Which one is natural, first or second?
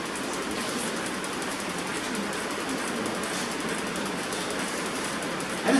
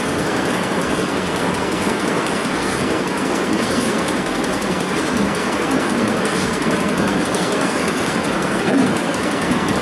first